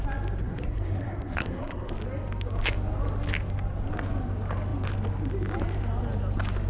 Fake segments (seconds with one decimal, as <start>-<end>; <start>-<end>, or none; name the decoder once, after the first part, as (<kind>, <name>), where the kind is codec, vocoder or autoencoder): 0.4-1.9 (codec, SNAC)